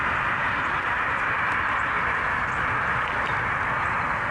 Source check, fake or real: real